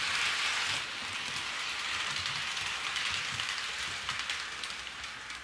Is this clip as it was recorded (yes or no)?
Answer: yes